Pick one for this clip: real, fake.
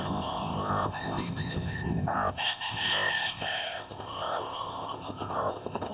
fake